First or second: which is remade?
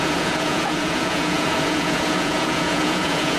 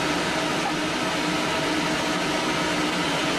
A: first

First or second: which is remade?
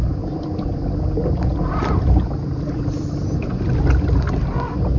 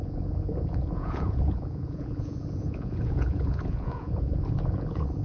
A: second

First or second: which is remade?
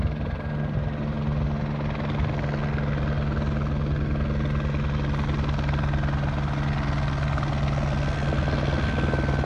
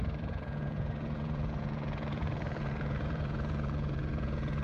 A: second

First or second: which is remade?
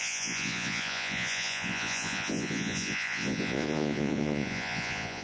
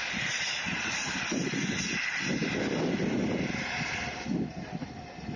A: first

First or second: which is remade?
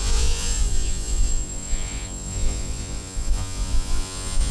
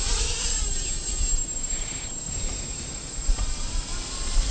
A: first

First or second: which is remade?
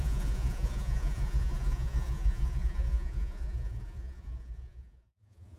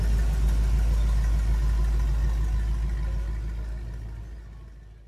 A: first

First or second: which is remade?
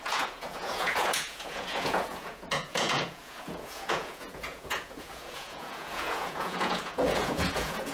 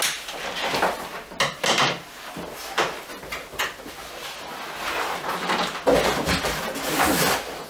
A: first